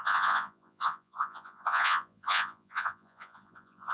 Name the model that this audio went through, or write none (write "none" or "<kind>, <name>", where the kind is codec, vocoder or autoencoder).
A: vocoder, Vocos